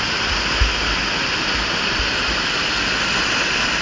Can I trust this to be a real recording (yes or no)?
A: yes